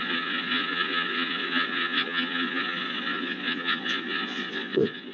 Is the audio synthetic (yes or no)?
yes